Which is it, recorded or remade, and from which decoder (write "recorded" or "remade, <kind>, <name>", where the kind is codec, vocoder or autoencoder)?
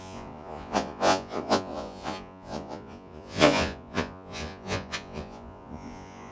remade, vocoder, Vocos